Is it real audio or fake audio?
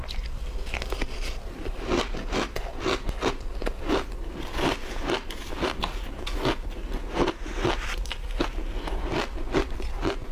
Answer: real